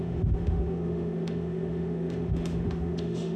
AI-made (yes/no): yes